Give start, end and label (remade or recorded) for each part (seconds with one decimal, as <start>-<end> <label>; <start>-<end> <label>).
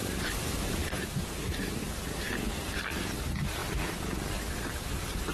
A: 0.0-1.8 remade; 1.8-2.5 recorded; 2.5-3.6 remade; 3.6-4.5 recorded; 4.5-5.3 remade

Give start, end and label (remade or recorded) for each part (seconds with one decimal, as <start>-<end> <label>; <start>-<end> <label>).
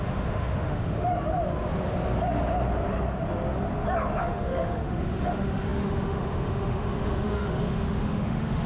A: 0.0-1.1 remade; 1.1-4.2 recorded; 4.2-8.7 remade